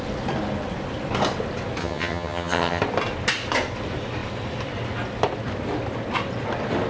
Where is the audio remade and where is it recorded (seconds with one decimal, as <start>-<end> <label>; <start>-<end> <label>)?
0.0-1.8 recorded; 1.8-2.8 remade; 2.8-6.9 recorded